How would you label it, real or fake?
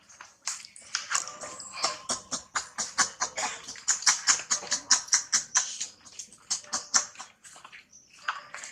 real